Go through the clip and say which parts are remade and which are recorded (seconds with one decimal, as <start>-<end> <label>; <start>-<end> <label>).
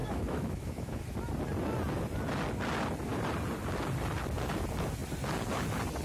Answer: 0.0-1.0 remade; 1.0-6.0 recorded